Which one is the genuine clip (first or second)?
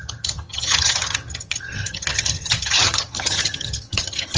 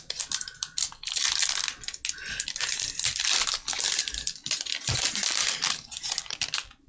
second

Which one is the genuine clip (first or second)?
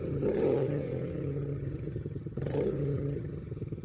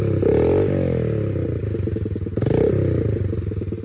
second